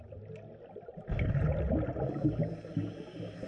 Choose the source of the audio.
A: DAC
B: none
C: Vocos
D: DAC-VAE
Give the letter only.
B